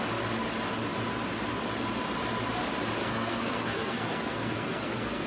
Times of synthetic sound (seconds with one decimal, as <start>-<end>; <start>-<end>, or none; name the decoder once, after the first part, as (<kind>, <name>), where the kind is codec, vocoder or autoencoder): 3.0-5.3 (codec, SNAC)